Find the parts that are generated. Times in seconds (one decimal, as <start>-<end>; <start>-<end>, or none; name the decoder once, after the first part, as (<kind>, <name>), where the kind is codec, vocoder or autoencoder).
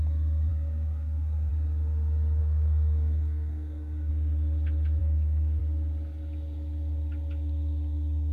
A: 0.5-1.5 (codec, SNAC); 2.4-4.1; 5.0-5.6